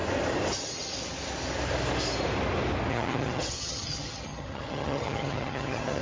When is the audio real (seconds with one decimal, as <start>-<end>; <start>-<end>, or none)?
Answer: 0.0-2.9